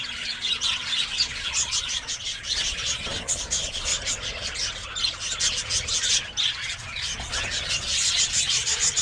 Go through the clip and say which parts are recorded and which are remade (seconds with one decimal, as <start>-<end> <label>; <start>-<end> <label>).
0.0-3.9 remade; 3.9-6.5 recorded; 6.5-9.0 remade